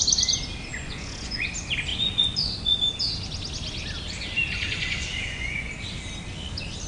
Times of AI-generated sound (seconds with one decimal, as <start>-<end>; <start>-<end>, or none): 0.7-1.5; 1.9-2.8; 4.5-5.7